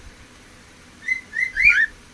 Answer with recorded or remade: remade